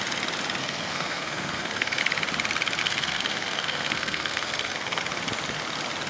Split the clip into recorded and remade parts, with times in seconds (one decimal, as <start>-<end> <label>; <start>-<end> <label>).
0.0-0.6 recorded; 0.6-2.0 remade; 2.0-2.8 recorded; 2.8-5.0 remade; 5.0-6.1 recorded